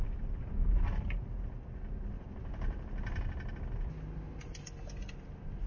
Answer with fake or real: real